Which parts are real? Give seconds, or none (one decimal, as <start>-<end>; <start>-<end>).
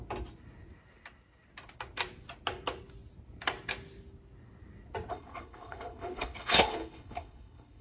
0.0-5.1